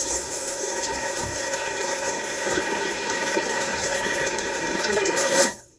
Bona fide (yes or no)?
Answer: no